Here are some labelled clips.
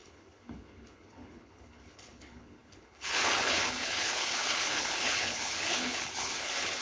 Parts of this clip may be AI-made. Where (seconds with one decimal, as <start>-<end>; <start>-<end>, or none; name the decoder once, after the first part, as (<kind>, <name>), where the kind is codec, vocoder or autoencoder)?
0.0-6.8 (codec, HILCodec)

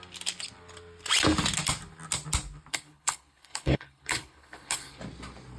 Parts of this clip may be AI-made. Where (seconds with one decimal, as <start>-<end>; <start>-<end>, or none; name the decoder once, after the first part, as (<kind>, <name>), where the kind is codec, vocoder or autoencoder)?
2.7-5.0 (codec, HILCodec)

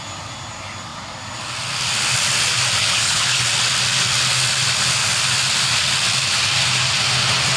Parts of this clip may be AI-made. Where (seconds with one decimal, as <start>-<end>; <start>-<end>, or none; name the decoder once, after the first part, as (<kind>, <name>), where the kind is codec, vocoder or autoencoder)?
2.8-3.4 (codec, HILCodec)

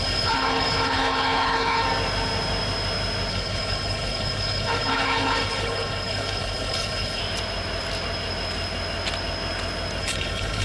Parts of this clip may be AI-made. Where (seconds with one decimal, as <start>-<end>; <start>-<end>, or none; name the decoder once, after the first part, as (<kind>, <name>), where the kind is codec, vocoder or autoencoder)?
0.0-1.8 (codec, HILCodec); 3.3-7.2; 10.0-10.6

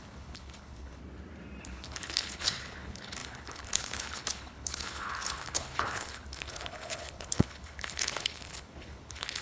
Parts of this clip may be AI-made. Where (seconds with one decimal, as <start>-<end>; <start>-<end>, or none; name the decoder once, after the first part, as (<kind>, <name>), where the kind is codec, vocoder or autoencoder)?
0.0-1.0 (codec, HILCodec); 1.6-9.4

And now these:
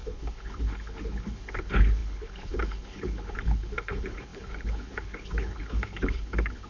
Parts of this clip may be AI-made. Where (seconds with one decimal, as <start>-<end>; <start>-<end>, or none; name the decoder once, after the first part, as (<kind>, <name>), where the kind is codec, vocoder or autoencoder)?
0.0-6.7 (codec, HILCodec)

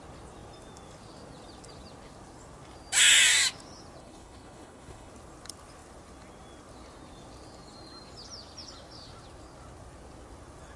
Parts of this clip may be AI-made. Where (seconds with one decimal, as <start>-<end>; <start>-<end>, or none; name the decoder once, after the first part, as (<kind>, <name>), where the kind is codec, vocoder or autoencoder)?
4.0-5.1 (codec, HILCodec)